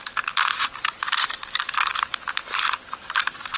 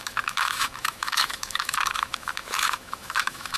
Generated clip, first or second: second